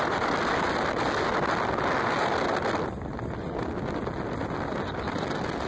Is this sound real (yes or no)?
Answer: yes